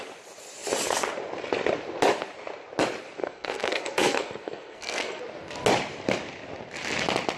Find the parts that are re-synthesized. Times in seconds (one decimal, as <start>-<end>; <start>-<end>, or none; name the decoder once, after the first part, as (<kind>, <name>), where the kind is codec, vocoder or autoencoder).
3.2-5.2 (codec, SNAC)